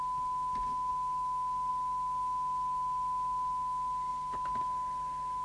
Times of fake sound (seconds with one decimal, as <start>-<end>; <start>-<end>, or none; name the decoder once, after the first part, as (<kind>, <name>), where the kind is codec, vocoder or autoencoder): none